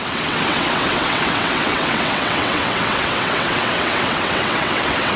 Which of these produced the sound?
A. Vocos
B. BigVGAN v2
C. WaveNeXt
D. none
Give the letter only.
C